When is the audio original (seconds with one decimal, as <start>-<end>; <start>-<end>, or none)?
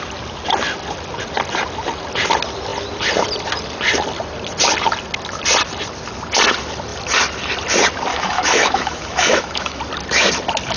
0.0-8.1; 9.8-10.8